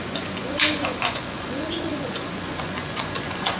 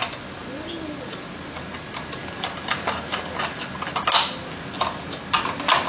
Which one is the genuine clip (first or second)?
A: second